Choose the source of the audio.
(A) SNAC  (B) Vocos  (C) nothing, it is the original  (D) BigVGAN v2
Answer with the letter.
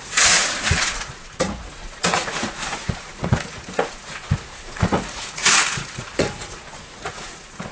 B